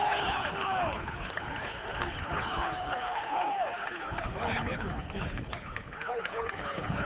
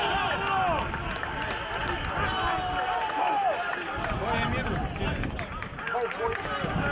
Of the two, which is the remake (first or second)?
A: first